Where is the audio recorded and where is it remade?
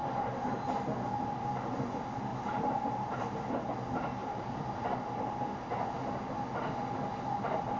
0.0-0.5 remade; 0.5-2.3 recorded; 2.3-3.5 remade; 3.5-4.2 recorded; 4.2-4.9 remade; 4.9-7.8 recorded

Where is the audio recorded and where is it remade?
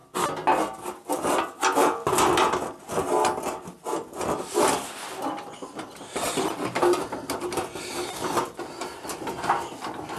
0.0-10.2 recorded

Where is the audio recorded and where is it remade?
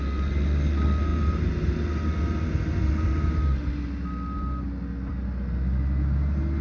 0.0-6.6 recorded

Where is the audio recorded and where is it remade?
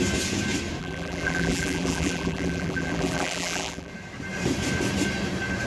0.0-0.8 recorded; 0.8-3.9 remade; 3.9-5.7 recorded